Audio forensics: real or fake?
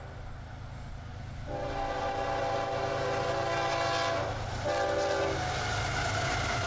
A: real